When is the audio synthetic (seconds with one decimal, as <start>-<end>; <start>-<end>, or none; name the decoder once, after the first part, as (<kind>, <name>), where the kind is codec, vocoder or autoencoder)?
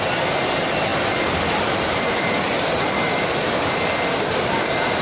0.9-3.9 (vocoder, BigVGAN v2); 4.3-5.0